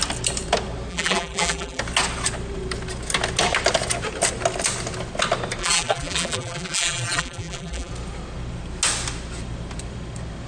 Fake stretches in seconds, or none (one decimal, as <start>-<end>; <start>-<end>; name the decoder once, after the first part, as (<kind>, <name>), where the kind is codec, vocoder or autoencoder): 0.9-1.8 (vocoder, BigVGAN v2); 5.6-7.9